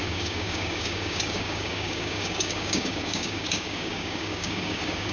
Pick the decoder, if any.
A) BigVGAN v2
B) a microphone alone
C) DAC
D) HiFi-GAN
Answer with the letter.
C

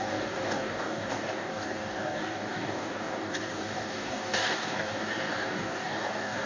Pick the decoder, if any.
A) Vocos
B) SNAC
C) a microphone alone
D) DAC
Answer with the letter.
D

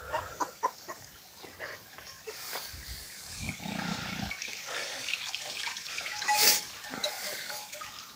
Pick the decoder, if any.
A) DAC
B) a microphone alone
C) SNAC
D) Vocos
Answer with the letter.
A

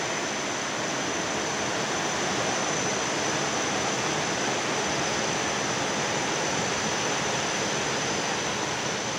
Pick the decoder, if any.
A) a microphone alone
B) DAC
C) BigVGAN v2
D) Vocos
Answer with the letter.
A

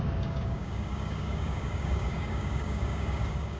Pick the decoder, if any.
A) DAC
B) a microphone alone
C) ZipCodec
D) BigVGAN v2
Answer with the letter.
A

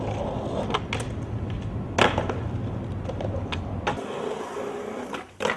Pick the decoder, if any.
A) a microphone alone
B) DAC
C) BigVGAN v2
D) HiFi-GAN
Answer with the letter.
A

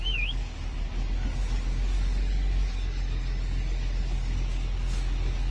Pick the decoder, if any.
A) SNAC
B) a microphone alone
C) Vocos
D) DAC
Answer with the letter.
D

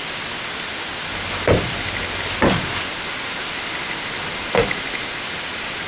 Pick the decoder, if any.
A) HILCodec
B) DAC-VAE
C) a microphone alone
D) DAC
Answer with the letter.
C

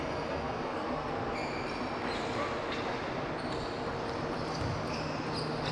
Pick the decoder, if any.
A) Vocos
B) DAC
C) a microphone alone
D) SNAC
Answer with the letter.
C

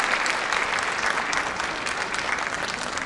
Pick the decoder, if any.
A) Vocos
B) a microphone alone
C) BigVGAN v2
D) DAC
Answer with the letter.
B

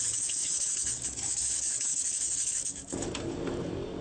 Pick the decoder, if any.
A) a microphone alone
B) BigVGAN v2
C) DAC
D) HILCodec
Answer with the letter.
C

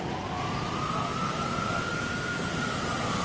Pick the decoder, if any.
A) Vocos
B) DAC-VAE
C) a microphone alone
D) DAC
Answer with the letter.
C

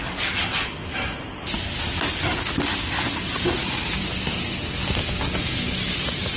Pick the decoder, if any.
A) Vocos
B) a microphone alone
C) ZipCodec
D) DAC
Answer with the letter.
B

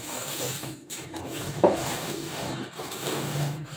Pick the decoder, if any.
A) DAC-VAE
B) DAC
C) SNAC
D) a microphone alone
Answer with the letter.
B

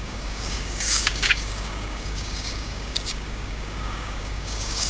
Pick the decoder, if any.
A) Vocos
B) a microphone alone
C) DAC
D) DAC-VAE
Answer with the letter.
C